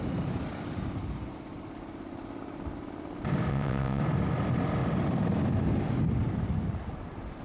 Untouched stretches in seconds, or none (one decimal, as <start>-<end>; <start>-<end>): 0.0-3.5; 4.0-7.4